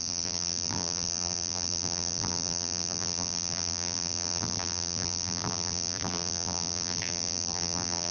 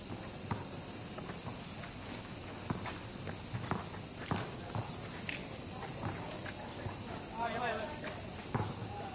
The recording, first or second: second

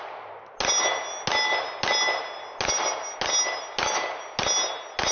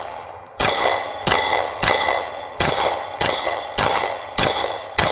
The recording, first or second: first